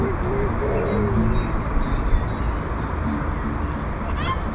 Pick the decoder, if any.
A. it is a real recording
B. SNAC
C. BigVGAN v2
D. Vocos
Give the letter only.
A